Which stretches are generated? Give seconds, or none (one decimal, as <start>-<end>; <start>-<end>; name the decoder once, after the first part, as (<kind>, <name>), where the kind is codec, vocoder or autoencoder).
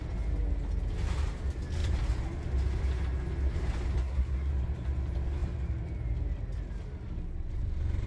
4.0-4.5 (codec, SNAC)